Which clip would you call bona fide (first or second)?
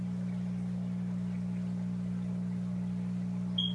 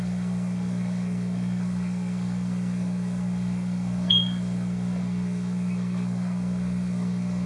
first